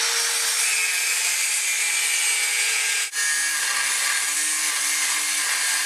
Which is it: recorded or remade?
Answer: recorded